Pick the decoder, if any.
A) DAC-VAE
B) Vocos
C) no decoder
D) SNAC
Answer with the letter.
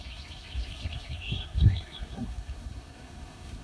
D